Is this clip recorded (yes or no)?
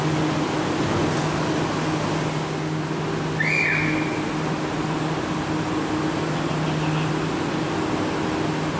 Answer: yes